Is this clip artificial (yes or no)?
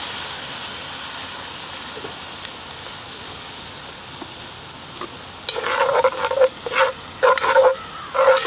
no